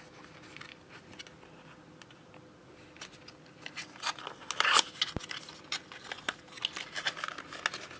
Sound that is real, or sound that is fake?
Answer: real